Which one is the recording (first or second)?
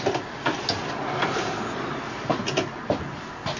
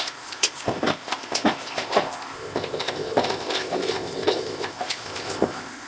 first